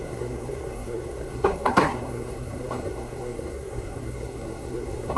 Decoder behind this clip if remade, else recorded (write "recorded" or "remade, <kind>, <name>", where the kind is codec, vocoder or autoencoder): remade, codec, SNAC